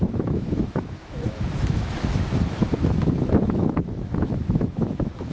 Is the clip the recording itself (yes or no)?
no